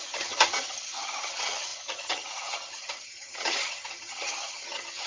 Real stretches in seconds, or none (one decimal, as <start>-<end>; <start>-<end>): none